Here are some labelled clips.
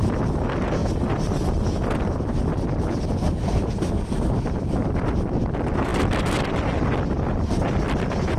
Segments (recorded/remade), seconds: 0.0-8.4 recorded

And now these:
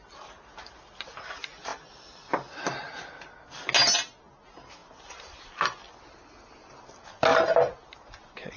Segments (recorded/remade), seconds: 0.0-1.7 recorded; 1.7-3.6 remade; 3.6-4.8 recorded; 4.8-6.0 remade; 6.0-7.3 recorded; 7.3-7.9 remade; 7.9-8.6 recorded

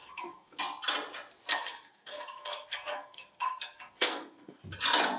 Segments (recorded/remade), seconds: 0.0-0.6 remade; 0.6-1.5 recorded; 1.5-4.6 remade; 4.6-5.2 recorded

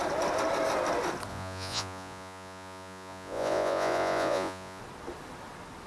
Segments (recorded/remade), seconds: 0.0-1.3 recorded; 1.3-4.8 remade; 4.8-5.9 recorded

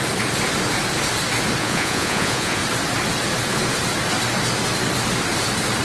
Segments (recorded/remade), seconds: 0.0-1.6 recorded; 1.6-2.6 remade; 2.6-5.8 recorded

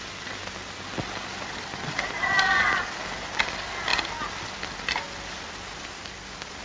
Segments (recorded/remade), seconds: 0.0-6.6 recorded

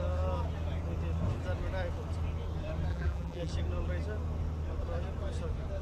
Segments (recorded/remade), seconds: 0.0-2.9 recorded; 2.9-3.5 remade; 3.5-5.8 recorded

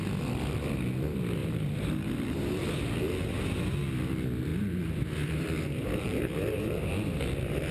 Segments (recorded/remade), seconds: 0.0-1.4 recorded; 1.4-2.8 remade; 2.8-4.5 recorded; 4.5-6.4 remade; 6.4-7.7 recorded